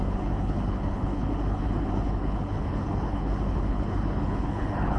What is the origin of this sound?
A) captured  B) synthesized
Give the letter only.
B